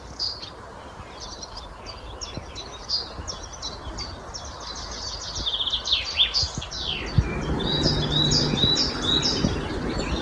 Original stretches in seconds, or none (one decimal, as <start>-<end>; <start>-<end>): 0.0-10.2